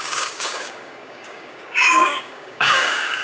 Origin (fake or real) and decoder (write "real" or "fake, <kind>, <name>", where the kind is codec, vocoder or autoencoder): fake, codec, DAC